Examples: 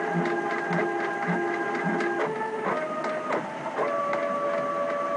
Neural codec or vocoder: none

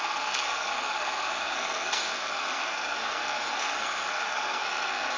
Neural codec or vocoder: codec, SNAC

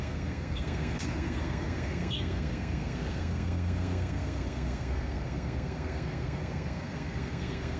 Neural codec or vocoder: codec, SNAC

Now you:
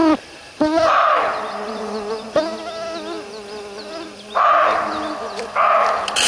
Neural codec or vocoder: none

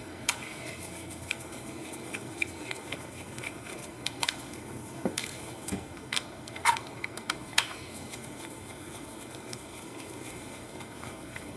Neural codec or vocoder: codec, SNAC